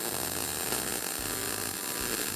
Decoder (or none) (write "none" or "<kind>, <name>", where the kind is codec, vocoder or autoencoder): none